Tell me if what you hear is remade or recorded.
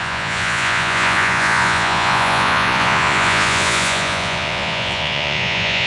remade